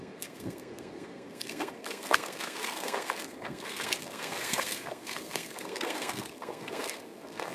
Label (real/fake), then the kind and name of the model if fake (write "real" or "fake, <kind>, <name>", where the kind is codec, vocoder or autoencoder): fake, codec, SNAC